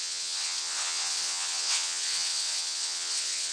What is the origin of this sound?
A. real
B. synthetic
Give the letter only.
B